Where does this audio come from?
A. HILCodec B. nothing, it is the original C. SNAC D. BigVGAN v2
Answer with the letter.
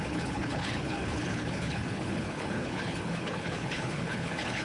A